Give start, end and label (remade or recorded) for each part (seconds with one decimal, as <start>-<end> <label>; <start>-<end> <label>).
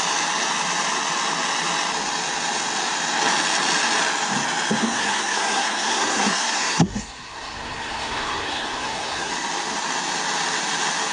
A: 0.0-4.8 recorded; 4.8-9.3 remade; 9.3-11.1 recorded